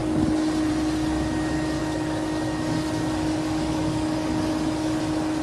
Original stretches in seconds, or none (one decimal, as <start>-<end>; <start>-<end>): 0.0-1.8; 5.0-5.4